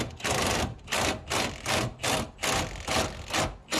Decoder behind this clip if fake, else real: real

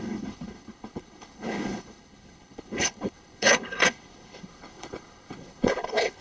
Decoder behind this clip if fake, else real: fake, codec, HILCodec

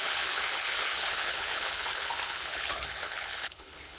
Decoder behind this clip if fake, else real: fake, codec, HILCodec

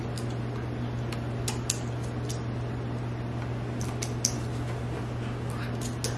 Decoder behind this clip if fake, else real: real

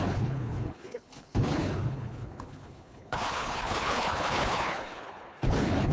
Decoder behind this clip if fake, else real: fake, codec, HILCodec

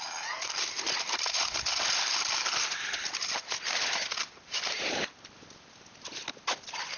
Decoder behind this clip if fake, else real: real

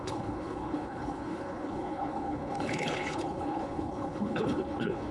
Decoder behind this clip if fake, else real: fake, codec, HILCodec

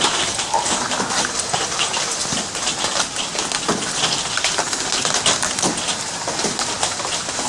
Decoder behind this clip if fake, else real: real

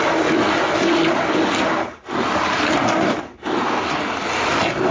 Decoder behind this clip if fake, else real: real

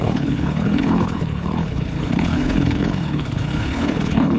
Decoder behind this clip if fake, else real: fake, codec, HILCodec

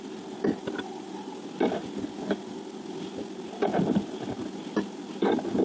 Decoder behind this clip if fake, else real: real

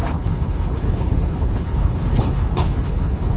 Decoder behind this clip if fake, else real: fake, codec, HILCodec